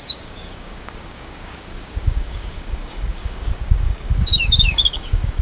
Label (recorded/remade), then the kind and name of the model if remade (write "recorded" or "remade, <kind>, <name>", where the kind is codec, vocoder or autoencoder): remade, codec, DAC